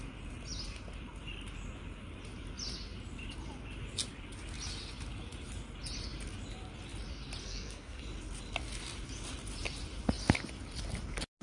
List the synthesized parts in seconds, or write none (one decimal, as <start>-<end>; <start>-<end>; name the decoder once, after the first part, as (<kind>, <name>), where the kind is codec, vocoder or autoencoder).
7.4-8.0 (codec, SNAC)